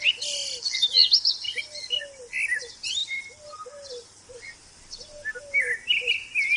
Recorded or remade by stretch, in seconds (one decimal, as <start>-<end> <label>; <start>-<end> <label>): 0.0-6.6 recorded